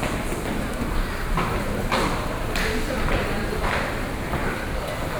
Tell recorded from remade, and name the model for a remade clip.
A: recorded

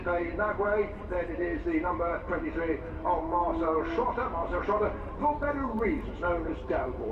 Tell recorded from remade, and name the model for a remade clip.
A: remade, vocoder, BigVGAN v2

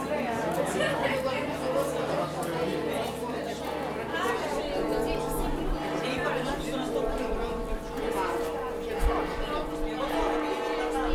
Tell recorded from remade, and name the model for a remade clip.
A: recorded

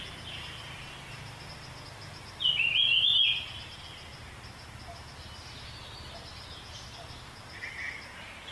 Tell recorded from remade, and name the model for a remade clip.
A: recorded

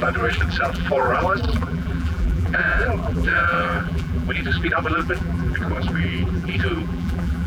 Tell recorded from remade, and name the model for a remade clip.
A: remade, vocoder, BigVGAN v2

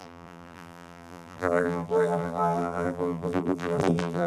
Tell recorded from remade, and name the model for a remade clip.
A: remade, vocoder, BigVGAN v2